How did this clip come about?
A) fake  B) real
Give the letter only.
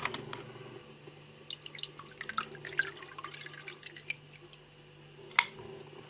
B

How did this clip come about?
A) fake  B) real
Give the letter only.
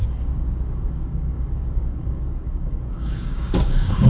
A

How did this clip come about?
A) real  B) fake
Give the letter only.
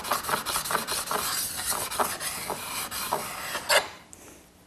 A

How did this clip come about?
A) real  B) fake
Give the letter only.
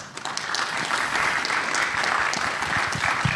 A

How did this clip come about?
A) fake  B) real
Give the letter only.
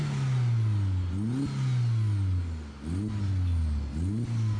B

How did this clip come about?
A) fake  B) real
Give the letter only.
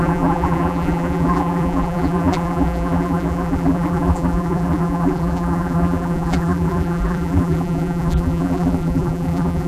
A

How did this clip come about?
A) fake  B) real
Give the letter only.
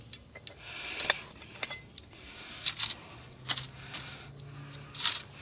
B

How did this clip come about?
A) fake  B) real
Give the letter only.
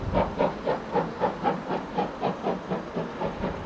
B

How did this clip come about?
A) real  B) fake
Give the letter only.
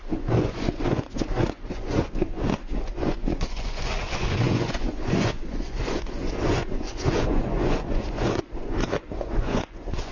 B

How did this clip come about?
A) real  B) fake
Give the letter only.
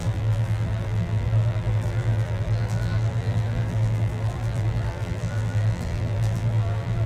B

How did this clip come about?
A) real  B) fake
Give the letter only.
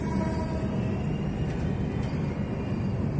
A